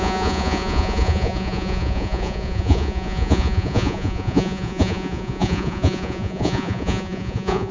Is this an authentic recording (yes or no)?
no